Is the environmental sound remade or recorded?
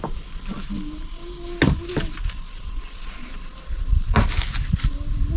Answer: recorded